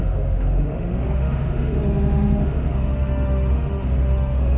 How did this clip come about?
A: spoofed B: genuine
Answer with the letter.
A